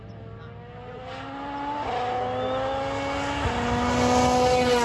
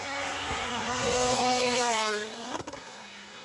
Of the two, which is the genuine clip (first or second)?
first